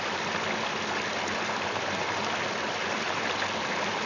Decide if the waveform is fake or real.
real